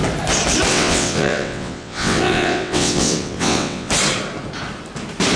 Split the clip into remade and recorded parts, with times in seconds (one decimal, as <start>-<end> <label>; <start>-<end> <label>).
0.0-0.7 recorded; 0.7-3.9 remade; 3.9-5.4 recorded